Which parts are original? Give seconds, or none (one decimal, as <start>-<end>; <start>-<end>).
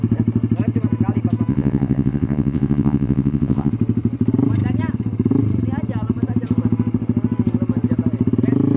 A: 0.0-1.5; 3.7-8.8